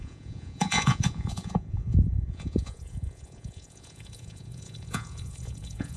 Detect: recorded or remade remade